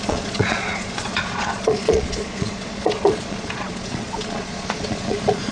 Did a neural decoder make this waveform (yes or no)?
yes